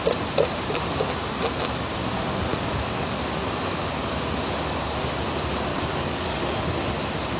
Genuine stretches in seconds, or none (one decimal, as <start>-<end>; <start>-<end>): 0.0-2.5; 3.2-5.7; 6.7-7.4